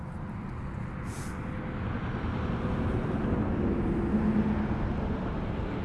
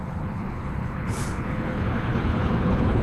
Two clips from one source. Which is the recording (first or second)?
first